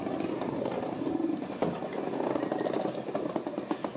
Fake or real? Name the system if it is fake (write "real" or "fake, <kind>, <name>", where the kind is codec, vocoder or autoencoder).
real